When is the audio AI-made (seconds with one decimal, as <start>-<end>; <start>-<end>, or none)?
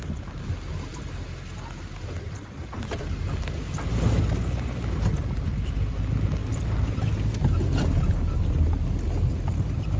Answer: 0.9-3.1